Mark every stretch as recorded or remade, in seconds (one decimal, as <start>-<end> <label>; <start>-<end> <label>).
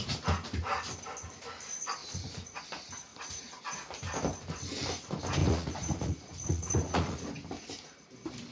0.0-2.0 recorded; 2.0-2.6 remade; 2.6-3.1 recorded; 3.1-3.6 remade; 3.6-5.4 recorded; 5.4-7.3 remade; 7.3-8.5 recorded